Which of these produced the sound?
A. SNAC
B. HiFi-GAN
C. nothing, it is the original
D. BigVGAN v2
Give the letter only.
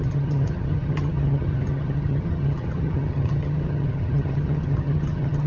B